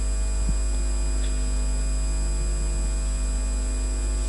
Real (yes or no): yes